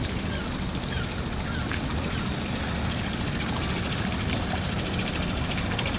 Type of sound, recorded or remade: recorded